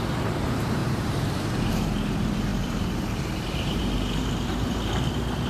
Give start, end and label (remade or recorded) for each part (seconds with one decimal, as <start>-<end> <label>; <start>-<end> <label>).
0.0-5.5 remade